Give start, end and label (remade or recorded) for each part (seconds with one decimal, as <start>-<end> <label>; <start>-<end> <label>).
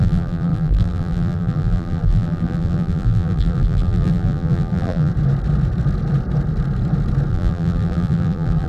0.0-5.1 remade; 5.1-7.3 recorded; 7.3-8.7 remade